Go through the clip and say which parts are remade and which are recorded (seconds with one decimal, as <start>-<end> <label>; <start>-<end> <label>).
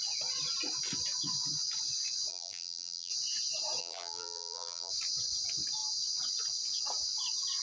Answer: 0.0-2.3 recorded; 2.3-3.1 remade; 3.1-3.8 recorded; 3.8-4.9 remade; 4.9-7.6 recorded